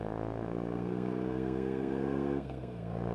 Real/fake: fake